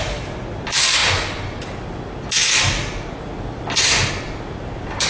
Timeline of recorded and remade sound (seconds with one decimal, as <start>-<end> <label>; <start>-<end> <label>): 0.0-5.1 recorded